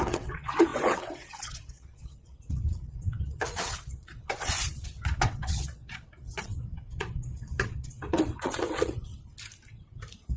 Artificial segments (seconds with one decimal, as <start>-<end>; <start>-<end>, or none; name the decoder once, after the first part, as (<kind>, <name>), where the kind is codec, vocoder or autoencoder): 0.0-9.1 (vocoder, WaveNeXt)